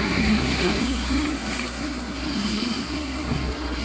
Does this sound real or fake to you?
fake